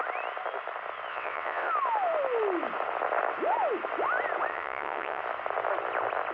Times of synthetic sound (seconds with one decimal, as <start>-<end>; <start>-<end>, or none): 1.1-1.7; 4.5-5.2